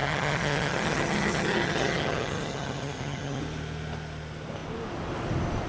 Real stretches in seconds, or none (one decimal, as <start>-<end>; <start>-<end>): 3.4-5.7